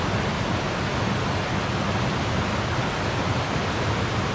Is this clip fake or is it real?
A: real